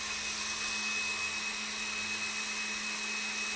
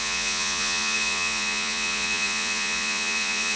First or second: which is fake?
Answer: second